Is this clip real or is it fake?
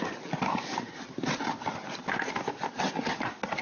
real